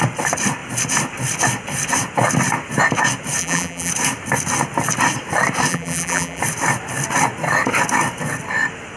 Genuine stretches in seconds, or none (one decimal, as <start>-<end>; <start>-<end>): 0.0-3.4; 3.9-5.7; 6.4-9.0